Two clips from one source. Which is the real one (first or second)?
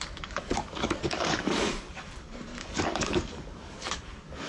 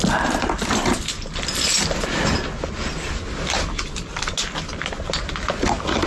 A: second